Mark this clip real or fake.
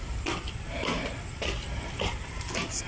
real